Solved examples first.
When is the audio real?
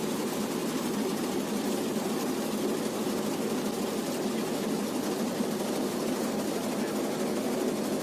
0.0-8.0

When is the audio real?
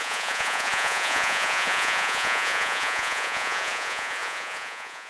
none